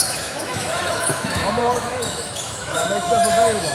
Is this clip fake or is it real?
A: fake